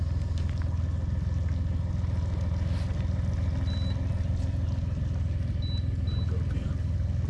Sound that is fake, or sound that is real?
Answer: real